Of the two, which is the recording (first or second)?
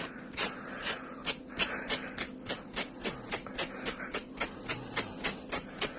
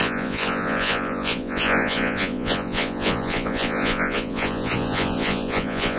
first